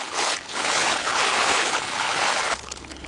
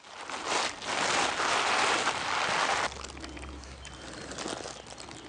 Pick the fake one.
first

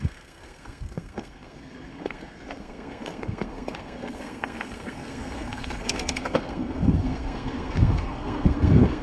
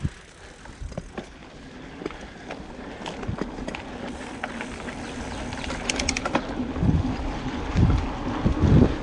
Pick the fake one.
first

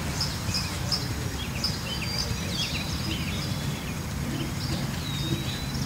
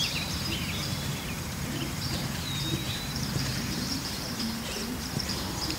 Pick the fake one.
second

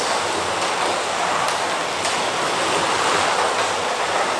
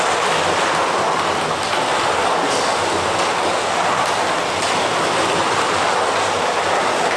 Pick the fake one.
first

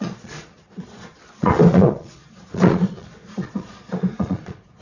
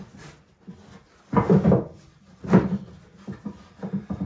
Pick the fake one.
first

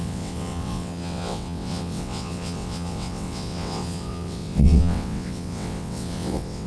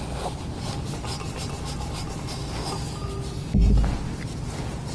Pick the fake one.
first